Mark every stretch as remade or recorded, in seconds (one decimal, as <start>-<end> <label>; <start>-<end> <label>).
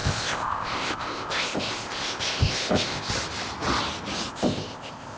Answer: 0.0-3.1 remade; 3.1-4.3 recorded; 4.3-5.2 remade